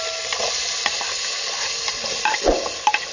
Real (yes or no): yes